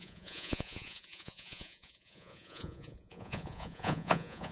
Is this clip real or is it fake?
fake